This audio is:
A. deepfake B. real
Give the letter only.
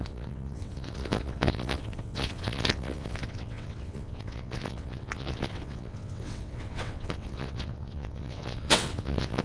A